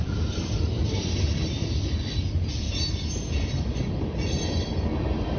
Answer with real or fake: fake